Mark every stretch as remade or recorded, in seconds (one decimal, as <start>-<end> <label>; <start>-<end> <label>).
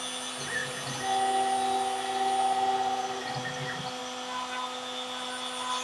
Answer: 0.0-5.8 recorded